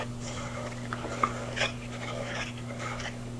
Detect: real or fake fake